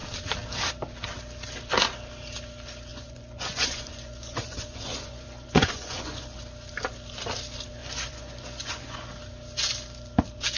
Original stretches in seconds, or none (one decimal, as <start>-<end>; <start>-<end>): 0.0-2.9; 6.4-7.8; 9.1-10.6